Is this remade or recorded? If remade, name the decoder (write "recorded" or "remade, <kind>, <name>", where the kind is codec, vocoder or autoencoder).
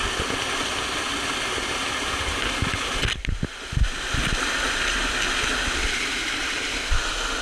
recorded